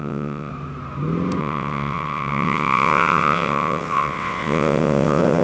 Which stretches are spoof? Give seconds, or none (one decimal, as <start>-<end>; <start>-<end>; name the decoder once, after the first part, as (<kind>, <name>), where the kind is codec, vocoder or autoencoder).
0.0-0.5 (vocoder, WaveNeXt); 1.4-5.4